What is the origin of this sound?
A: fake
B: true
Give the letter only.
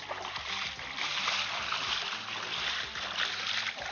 B